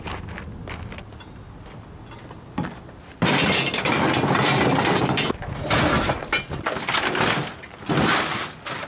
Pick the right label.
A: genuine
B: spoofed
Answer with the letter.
A